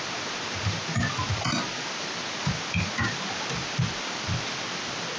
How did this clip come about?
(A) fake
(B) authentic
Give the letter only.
B